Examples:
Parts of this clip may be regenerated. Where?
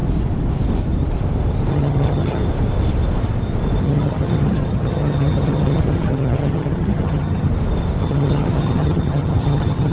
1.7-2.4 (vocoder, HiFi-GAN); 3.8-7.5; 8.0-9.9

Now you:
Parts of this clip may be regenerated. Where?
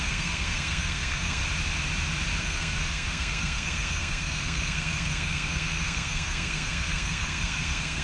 0.0-1.4 (codec, SNAC); 2.4-8.0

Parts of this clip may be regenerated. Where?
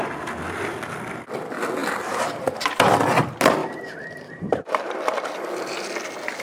1.8-2.6 (vocoder, BigVGAN v2); 3.6-4.9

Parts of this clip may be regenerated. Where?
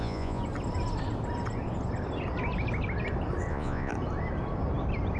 0.0-0.4 (vocoder, Vocos); 3.5-3.9